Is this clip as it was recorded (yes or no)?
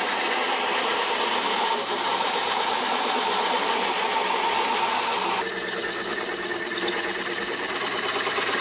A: yes